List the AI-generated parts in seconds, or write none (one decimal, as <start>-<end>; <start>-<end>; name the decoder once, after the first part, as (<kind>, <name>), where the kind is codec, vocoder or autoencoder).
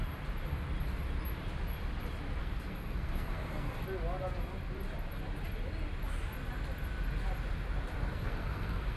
2.4-3.8 (codec, SNAC); 8.1-9.0